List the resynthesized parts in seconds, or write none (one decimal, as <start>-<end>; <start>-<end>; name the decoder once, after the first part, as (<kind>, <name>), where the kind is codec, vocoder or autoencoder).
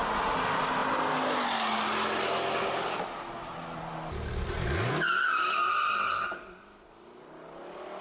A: none